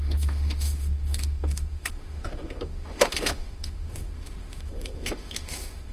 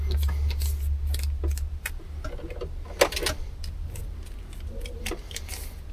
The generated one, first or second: first